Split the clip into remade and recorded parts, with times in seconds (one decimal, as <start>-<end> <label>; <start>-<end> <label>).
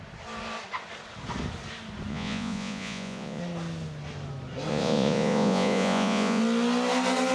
0.0-2.1 recorded; 2.1-3.4 remade; 3.4-4.7 recorded; 4.7-6.4 remade; 6.4-7.3 recorded